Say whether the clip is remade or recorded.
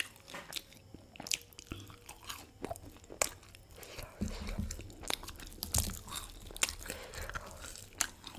recorded